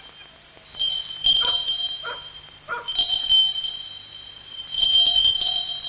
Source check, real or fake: real